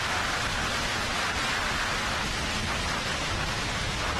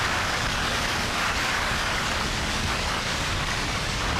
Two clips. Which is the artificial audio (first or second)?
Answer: second